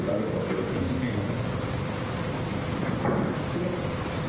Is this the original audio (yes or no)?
yes